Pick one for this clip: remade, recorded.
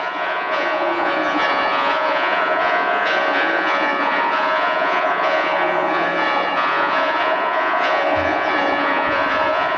remade